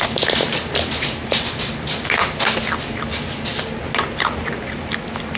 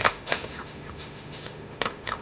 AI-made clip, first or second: second